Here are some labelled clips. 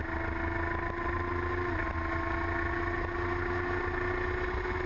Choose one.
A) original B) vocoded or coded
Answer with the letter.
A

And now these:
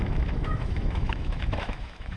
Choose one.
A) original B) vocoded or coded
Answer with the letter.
B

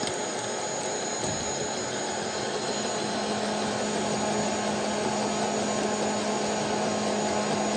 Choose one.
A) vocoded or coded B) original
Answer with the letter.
B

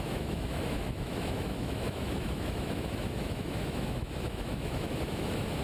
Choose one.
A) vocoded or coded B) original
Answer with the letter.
A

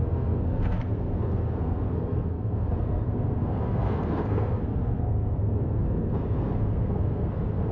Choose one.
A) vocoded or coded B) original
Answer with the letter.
A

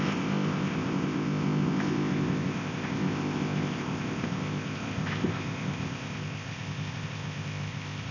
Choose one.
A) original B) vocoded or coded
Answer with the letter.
B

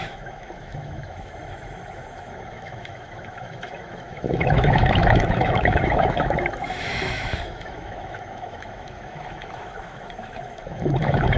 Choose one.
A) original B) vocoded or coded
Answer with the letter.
B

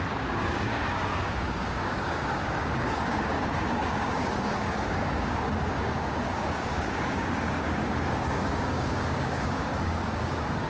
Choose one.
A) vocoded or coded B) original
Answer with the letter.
A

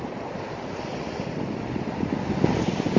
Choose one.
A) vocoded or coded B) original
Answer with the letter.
B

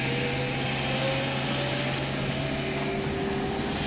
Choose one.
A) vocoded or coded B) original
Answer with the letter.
B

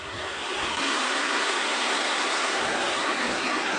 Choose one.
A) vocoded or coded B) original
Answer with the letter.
A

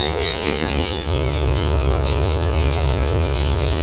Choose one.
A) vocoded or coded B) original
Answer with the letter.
A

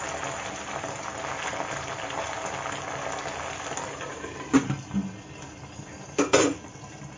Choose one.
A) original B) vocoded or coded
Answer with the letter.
A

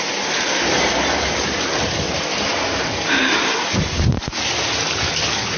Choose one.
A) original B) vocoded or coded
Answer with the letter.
A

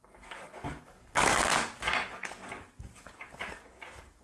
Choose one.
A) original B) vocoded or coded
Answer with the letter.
B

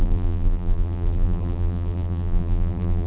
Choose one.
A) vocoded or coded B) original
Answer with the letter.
A